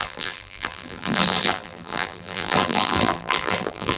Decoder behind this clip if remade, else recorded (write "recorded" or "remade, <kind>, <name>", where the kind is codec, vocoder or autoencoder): remade, vocoder, BigVGAN v2